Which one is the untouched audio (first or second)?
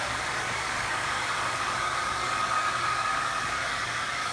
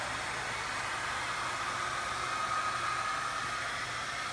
second